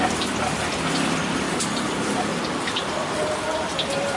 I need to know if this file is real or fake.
fake